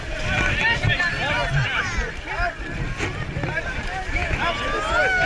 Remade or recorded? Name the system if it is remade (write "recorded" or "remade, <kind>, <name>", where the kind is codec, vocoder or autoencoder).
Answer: recorded